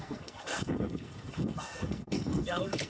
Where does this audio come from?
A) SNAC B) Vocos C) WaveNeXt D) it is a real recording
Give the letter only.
A